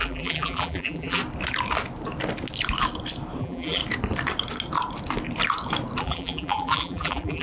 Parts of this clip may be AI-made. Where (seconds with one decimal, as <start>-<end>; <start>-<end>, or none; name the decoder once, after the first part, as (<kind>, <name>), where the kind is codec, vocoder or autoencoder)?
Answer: 0.0-1.2 (vocoder, BigVGAN v2); 3.4-3.8; 6.0-7.4